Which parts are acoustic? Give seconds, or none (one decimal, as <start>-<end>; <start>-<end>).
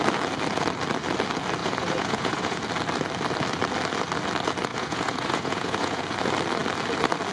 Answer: 0.0-1.6; 2.6-4.7; 6.0-7.3